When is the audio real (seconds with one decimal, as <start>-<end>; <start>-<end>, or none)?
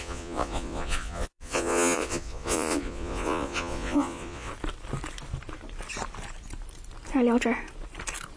4.5-8.4